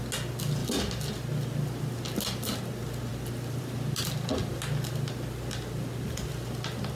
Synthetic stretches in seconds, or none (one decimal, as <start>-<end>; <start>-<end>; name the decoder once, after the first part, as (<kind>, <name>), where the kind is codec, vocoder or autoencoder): none